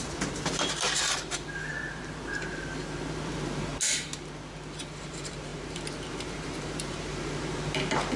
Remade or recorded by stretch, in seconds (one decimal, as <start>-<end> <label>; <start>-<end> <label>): 0.0-3.7 remade; 3.7-5.0 recorded; 5.0-8.2 remade